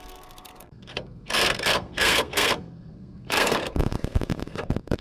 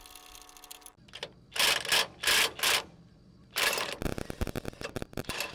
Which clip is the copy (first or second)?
first